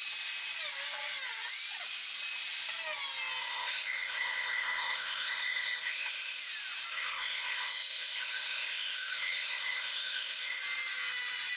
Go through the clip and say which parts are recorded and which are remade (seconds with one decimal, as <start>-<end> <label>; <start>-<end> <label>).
0.0-3.4 recorded; 3.4-6.4 remade; 6.4-6.9 recorded; 6.9-10.6 remade; 10.6-11.6 recorded